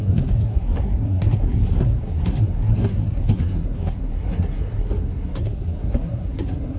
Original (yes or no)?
no